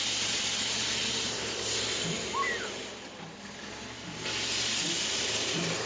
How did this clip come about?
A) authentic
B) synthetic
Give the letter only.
A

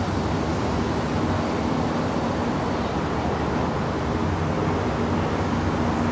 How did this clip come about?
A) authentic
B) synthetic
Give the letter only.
A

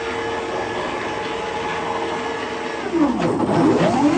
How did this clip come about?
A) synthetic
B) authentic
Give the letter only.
B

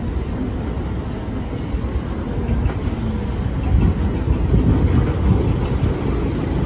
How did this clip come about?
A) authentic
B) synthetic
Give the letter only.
A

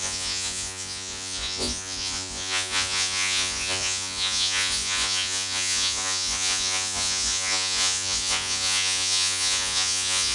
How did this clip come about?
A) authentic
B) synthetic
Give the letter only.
B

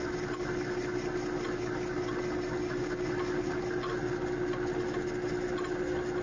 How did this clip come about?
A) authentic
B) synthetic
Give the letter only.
A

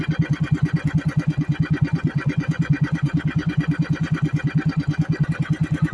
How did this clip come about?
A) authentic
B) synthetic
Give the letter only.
B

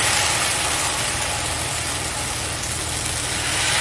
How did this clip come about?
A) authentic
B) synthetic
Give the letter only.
A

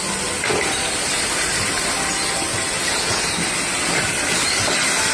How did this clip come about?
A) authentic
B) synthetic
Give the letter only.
A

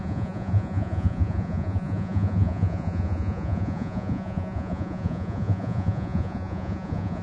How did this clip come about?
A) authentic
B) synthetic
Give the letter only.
B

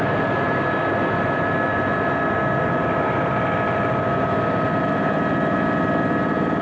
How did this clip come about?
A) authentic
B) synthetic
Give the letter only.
A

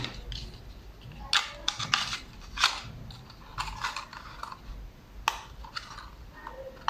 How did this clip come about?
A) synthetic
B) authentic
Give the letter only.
B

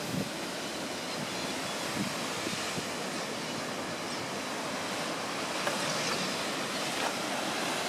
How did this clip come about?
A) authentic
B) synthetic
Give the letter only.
A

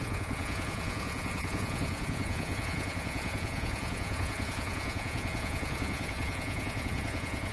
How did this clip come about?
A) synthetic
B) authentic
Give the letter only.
A